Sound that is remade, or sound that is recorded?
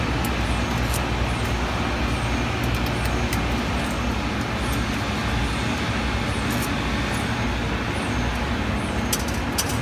recorded